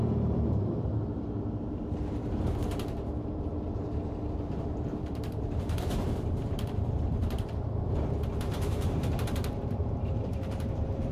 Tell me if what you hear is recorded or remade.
remade